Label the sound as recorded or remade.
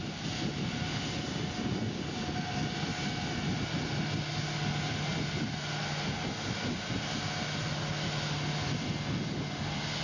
recorded